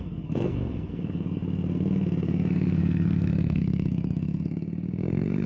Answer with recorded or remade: remade